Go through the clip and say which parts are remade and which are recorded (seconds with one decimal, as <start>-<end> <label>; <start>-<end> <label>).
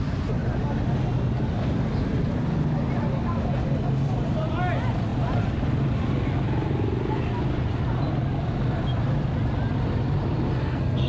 0.0-10.6 recorded; 10.6-11.1 remade